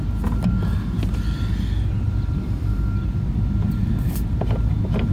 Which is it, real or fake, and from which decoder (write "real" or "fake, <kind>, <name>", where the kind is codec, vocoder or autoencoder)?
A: real